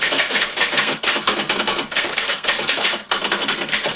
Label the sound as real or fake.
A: fake